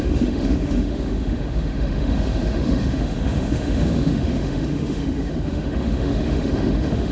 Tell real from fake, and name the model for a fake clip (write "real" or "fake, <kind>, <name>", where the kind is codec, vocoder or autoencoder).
fake, autoencoder, DAC-VAE